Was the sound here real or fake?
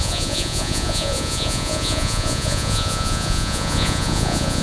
fake